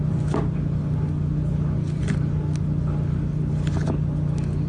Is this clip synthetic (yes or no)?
no